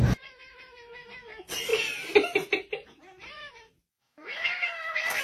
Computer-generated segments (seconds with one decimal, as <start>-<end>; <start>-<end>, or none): 3.9-5.2